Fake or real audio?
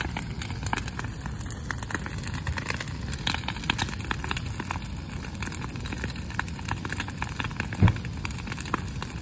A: real